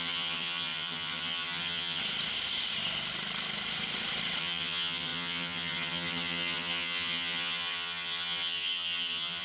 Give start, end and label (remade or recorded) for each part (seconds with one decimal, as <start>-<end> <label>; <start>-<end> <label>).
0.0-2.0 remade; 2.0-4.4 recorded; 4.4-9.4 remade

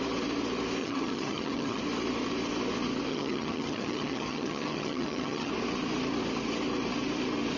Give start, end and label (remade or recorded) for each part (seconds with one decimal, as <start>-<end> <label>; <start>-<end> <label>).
0.0-0.8 recorded; 0.8-1.8 remade; 1.8-3.1 recorded; 3.1-5.5 remade; 5.5-7.6 recorded

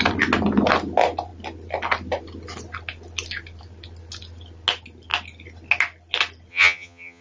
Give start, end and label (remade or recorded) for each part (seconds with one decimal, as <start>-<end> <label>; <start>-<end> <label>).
0.0-6.5 recorded; 6.5-7.2 remade

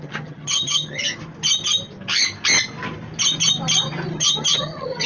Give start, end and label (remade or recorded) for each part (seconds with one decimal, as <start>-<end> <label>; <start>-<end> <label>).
0.0-1.0 remade; 1.0-4.1 recorded; 4.1-5.1 remade

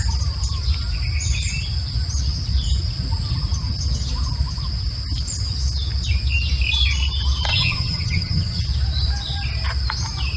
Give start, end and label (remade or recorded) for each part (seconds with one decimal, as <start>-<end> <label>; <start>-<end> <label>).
0.0-7.5 recorded; 7.5-8.6 remade; 8.6-10.4 recorded

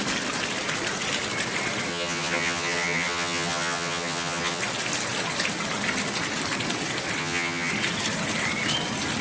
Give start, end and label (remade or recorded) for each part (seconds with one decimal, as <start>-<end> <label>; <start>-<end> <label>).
0.0-1.9 recorded; 1.9-4.6 remade; 4.6-7.2 recorded; 7.2-7.7 remade; 7.7-9.2 recorded

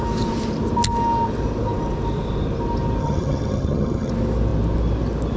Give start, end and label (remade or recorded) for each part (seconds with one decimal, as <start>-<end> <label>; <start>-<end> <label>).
0.0-3.0 recorded; 3.0-4.1 remade; 4.1-5.4 recorded

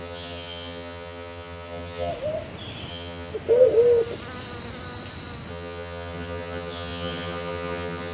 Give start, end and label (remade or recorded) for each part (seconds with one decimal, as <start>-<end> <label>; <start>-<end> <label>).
0.0-2.1 remade; 2.1-2.9 recorded; 2.9-3.3 remade; 3.3-5.5 recorded; 5.5-8.1 remade